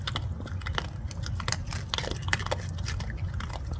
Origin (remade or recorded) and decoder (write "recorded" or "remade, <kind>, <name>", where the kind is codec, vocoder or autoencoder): recorded